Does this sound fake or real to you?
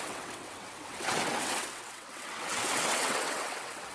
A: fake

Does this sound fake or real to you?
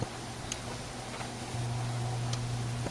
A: real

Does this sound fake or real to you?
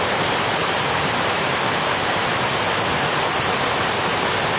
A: real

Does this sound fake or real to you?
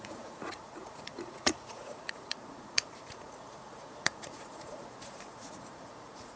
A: fake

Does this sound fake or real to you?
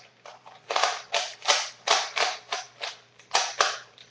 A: fake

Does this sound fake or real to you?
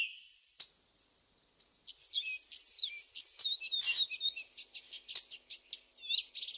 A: real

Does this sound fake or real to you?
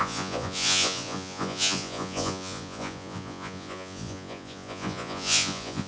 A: fake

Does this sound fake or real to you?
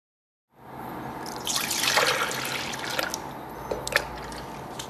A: real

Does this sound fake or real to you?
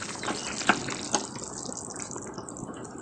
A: real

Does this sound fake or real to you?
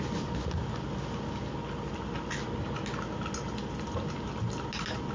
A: real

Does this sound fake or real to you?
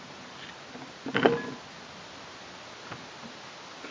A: real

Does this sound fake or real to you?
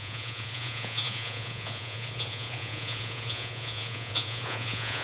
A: fake